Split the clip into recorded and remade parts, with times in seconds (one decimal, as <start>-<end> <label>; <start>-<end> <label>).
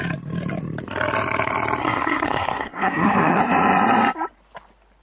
0.0-1.8 recorded; 1.8-3.4 remade; 3.4-5.0 recorded